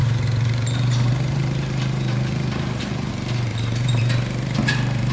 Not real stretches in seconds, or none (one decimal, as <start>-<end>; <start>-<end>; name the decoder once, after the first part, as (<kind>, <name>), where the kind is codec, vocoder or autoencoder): 0.0-3.1 (vocoder, BigVGAN v2); 3.5-5.1